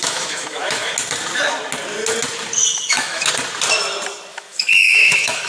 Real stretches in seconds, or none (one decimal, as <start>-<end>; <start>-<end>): 0.9-2.6; 3.3-4.3